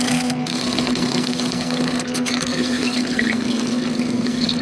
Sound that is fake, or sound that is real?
fake